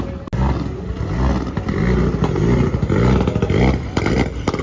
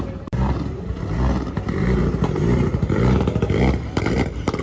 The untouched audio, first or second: first